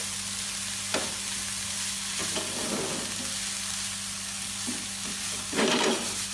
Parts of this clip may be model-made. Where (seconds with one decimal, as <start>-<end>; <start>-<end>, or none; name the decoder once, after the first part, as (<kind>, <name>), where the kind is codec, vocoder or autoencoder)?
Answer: none

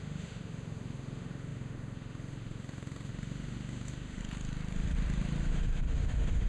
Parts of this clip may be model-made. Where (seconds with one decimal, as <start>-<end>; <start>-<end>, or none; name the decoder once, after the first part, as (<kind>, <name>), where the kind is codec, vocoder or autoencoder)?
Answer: 0.0-4.2 (autoencoder, DAC-VAE); 5.5-6.5

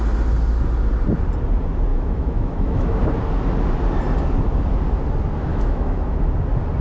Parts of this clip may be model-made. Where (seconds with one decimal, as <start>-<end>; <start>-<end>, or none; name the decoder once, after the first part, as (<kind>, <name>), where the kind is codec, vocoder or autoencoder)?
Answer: 1.9-3.0 (autoencoder, DAC-VAE); 5.5-6.2

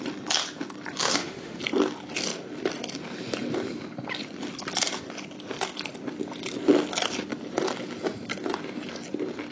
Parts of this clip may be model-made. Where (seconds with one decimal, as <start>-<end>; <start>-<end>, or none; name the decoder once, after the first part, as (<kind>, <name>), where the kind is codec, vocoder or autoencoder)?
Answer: 1.0-1.6 (autoencoder, DAC-VAE)

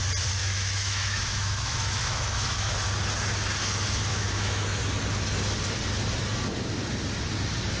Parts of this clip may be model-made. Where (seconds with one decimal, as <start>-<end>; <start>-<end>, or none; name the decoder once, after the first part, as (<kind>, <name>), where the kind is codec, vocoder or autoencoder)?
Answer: 0.4-2.7 (autoencoder, DAC-VAE); 4.1-4.8